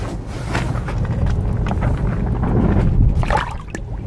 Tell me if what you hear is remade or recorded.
recorded